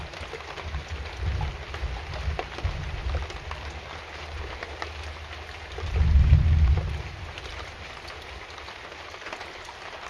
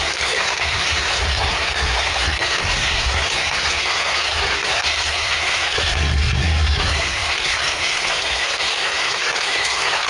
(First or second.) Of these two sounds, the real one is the first